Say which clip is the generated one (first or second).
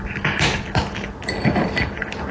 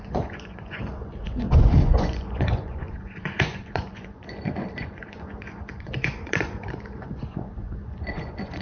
second